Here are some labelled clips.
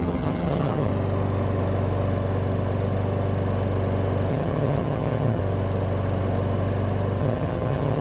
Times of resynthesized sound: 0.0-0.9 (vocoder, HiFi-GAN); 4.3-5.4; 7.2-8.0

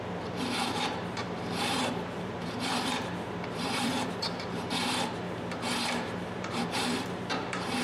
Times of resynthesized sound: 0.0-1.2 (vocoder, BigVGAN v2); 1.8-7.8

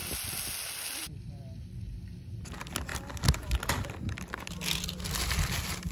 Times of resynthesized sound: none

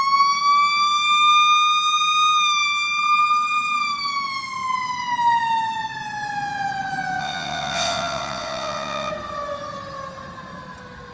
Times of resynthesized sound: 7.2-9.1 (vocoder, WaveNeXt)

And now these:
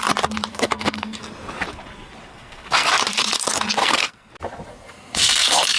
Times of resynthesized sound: 0.5-1.2 (codec, SNAC); 2.3-2.9; 3.8-4.3; 4.7-5.8